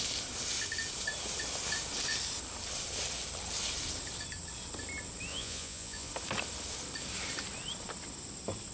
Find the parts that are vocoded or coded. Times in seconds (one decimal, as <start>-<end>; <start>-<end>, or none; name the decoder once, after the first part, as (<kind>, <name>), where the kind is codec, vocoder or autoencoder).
5.3-6.1 (vocoder, Vocos)